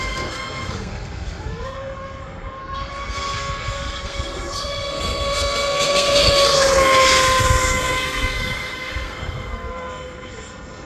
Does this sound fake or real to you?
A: fake